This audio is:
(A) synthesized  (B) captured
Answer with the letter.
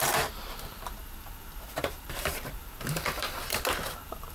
A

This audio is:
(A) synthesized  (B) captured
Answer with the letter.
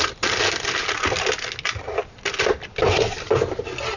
B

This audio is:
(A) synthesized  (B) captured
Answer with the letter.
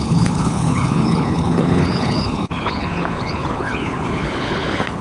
A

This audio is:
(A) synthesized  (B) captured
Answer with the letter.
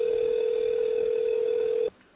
A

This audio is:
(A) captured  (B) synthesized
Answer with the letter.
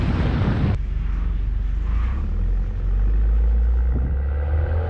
A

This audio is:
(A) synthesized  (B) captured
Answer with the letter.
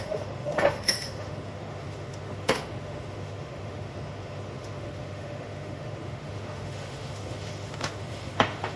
A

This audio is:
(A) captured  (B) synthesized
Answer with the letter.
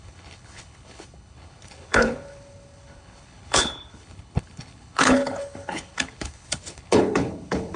B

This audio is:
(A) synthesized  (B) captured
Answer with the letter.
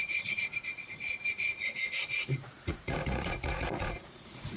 A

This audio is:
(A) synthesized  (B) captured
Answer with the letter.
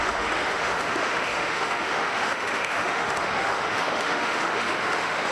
A